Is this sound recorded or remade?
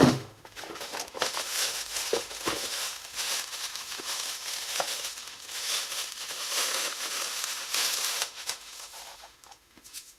remade